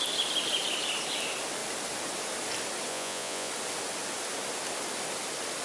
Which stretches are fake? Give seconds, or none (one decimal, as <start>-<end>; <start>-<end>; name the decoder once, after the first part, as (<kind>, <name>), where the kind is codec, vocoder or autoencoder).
2.9-3.5 (vocoder, Vocos)